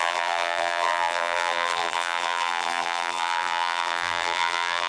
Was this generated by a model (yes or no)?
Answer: yes